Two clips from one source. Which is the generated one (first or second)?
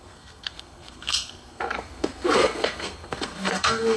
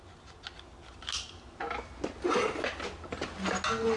first